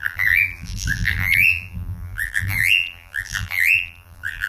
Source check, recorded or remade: remade